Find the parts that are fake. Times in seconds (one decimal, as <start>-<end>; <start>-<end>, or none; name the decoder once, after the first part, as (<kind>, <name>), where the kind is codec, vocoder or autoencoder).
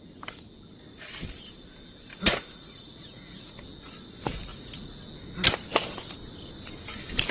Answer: 2.1-3.6 (vocoder, Vocos); 4.5-5.0